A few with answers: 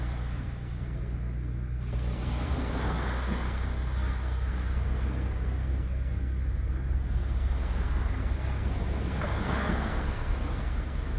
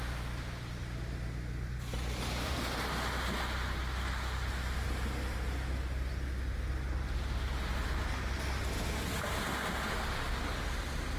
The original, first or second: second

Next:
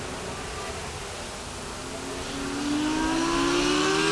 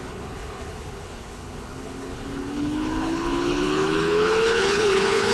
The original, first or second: first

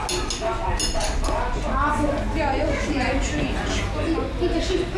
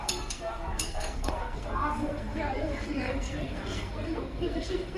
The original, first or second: first